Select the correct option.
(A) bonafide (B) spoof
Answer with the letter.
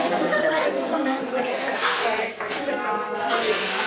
B